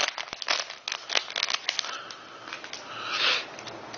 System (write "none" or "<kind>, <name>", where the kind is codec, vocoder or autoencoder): none